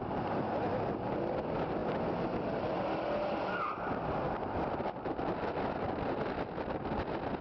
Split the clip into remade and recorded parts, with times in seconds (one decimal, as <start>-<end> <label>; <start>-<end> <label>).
0.0-7.4 recorded